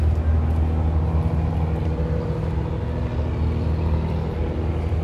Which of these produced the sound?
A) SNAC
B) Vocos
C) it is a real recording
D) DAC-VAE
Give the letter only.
C